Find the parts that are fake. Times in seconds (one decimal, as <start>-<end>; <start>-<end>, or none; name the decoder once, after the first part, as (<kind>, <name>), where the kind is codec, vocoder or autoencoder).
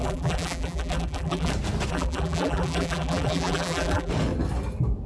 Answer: 0.0-1.5 (vocoder, BigVGAN v2); 1.9-4.1